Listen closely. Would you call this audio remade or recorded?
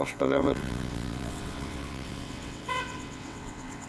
remade